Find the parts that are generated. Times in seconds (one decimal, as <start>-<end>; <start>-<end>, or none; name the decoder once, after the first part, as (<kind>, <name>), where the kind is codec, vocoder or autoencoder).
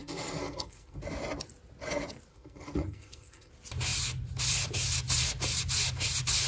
0.0-1.0 (codec, SNAC); 2.3-3.5